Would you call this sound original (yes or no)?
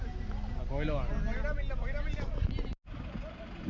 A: yes